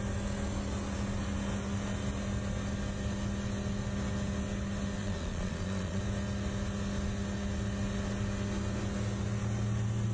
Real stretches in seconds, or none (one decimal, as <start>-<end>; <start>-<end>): 0.0-5.0; 6.0-10.1

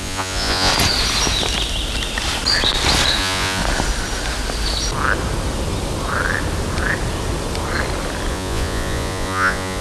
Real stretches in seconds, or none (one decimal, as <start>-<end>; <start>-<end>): 0.7-3.2; 3.6-8.3

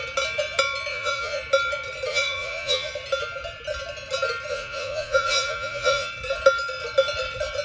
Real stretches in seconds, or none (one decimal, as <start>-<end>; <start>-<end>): 0.0-0.9; 1.4-2.1; 2.9-4.5; 6.1-7.6

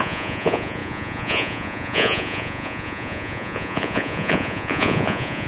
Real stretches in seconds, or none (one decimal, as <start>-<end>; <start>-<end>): none

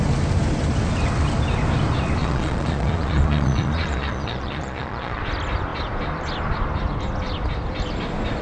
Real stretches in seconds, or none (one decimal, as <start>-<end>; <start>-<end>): 0.0-2.2; 5.2-8.4

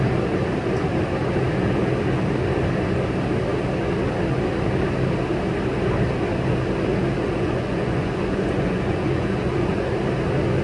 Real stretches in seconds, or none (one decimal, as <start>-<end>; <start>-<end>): 0.0-7.1; 9.9-10.6